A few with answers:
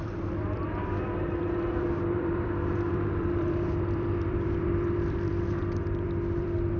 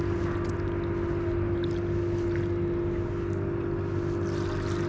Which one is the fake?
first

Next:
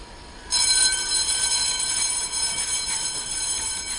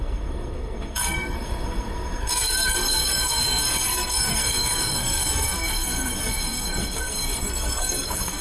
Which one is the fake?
second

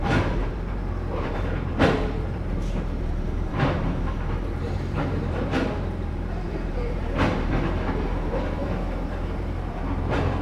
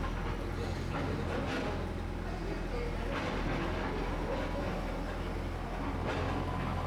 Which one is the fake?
first